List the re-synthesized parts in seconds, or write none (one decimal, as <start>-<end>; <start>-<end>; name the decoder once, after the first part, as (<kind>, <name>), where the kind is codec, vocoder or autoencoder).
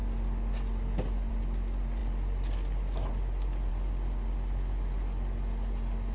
none